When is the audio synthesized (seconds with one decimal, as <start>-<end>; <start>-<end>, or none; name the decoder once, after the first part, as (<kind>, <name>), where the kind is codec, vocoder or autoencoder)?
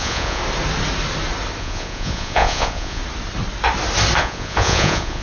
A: 0.0-0.4 (vocoder, Vocos); 1.6-3.0; 4.2-5.2